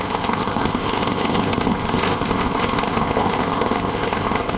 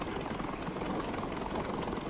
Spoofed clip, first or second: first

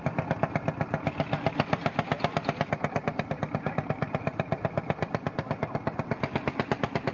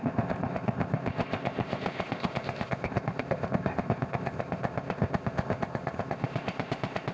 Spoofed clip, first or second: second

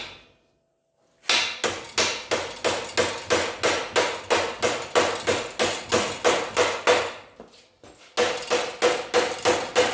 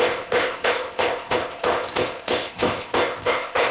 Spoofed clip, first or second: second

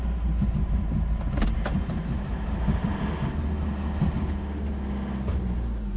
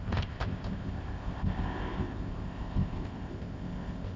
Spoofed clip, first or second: second